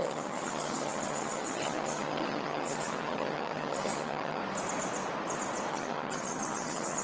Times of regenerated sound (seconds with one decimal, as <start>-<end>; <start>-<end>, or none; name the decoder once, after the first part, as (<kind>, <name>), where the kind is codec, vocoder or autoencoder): 0.0-4.4 (vocoder, HiFi-GAN); 5.7-7.0